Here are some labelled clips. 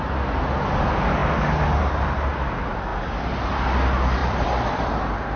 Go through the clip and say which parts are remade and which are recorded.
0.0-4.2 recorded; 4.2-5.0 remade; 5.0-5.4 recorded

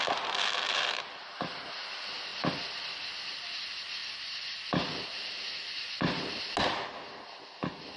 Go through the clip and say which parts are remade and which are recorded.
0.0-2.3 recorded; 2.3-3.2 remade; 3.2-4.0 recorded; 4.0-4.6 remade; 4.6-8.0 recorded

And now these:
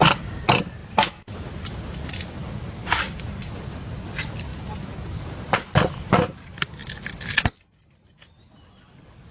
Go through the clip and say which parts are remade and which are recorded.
0.0-4.5 recorded; 4.5-6.1 remade; 6.1-9.3 recorded

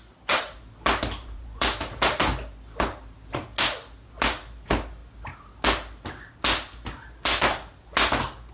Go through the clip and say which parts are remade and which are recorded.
0.0-1.2 recorded; 1.2-2.2 remade; 2.2-8.5 recorded

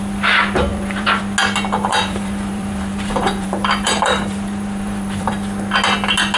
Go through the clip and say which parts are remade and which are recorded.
0.0-0.7 recorded; 0.7-1.2 remade; 1.2-1.9 recorded; 1.9-5.3 remade; 5.3-6.4 recorded

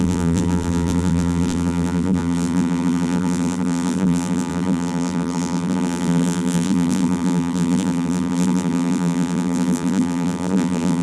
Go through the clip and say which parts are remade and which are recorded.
0.0-11.0 remade

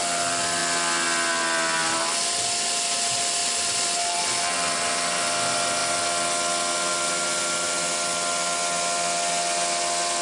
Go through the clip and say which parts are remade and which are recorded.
0.0-3.4 recorded; 3.4-4.2 remade; 4.2-10.2 recorded

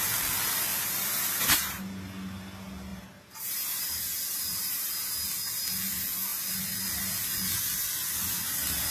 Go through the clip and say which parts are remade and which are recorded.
0.0-0.7 recorded; 0.7-1.8 remade; 1.8-2.9 recorded; 2.9-4.9 remade; 4.9-8.9 recorded